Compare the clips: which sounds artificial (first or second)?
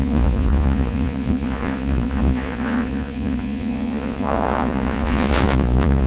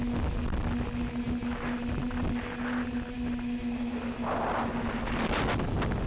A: first